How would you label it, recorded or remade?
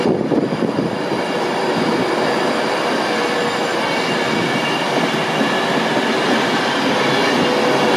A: recorded